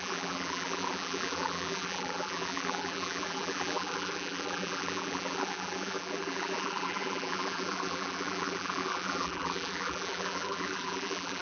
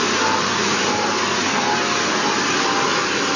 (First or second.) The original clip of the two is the second